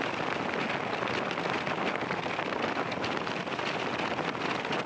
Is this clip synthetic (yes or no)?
no